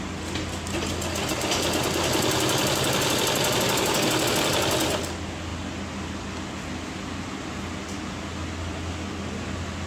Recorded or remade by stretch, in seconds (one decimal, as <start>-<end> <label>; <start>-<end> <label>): 0.0-9.9 recorded